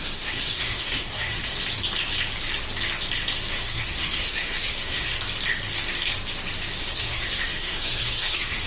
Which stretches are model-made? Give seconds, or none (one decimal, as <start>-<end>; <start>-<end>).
0.0-1.4; 3.5-5.1; 6.8-8.7